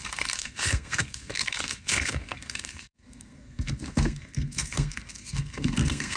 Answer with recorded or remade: remade